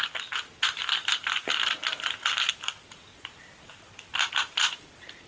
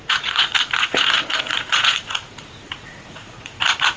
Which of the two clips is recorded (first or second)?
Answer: first